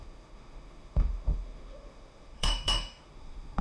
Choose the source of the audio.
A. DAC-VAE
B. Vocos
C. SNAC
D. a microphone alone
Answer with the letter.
A